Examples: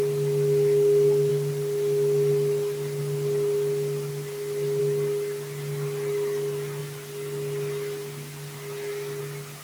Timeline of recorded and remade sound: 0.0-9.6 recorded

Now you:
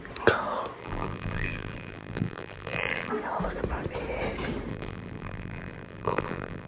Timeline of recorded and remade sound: 0.0-0.8 recorded; 0.8-3.1 remade; 3.1-4.7 recorded; 4.7-6.7 remade

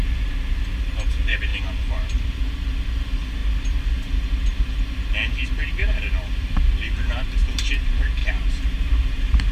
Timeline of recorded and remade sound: 0.0-8.2 recorded; 8.2-9.5 remade

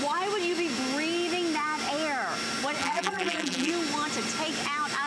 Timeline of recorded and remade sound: 0.0-2.8 recorded; 2.8-3.7 remade; 3.7-5.1 recorded

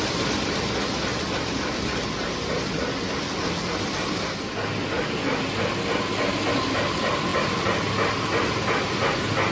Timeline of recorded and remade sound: 0.0-1.1 recorded; 1.1-2.9 remade; 2.9-9.5 recorded